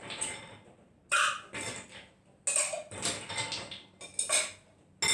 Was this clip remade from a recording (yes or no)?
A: no